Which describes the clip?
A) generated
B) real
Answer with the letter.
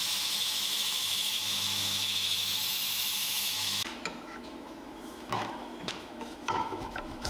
A